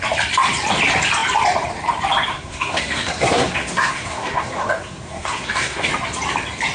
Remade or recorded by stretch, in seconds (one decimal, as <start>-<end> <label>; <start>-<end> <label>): 0.0-2.3 recorded; 2.3-5.9 remade; 5.9-6.7 recorded